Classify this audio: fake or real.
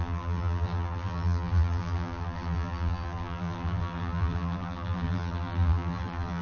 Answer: fake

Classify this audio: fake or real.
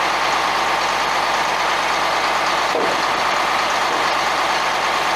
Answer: real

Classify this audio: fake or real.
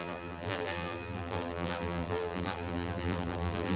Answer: fake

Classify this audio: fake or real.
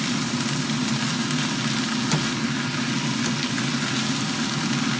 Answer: real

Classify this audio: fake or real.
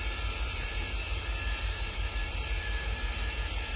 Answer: fake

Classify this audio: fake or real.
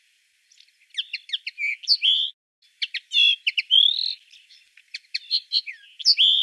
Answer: real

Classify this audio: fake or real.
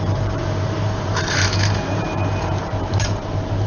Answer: fake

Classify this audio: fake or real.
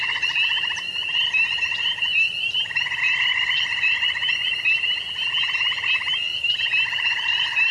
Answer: fake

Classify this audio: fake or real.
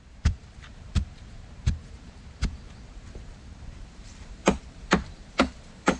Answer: fake